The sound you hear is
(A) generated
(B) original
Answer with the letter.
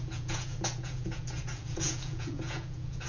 A